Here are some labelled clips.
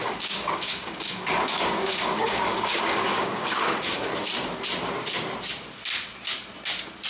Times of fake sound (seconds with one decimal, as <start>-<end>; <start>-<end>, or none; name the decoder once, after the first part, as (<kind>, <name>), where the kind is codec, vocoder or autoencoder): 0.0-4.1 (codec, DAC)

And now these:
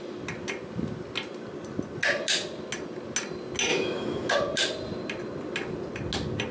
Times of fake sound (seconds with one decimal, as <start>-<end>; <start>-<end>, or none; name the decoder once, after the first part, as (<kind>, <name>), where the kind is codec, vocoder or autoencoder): 3.7-4.3 (autoencoder, DAC-VAE)

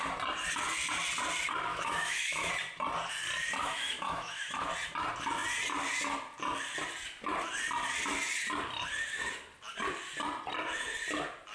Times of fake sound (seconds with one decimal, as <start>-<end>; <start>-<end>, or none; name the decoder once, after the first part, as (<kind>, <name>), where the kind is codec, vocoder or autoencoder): 1.7-2.5 (autoencoder, DAC-VAE); 3.6-4.7